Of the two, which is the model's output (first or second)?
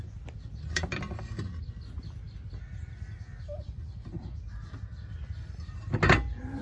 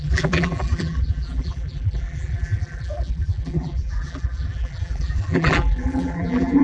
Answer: second